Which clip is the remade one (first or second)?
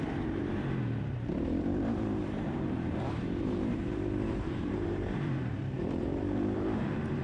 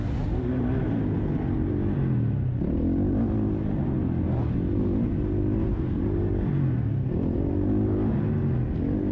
first